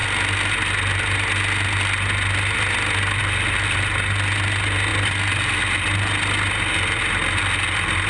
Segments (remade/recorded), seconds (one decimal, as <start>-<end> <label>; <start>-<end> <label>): 0.0-8.1 recorded